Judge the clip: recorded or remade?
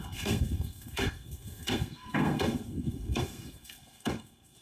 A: remade